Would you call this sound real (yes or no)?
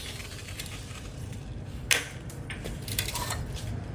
no